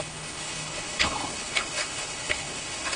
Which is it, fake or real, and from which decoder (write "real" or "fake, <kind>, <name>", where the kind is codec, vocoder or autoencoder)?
fake, codec, HILCodec